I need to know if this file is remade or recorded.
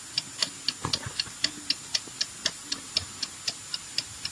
recorded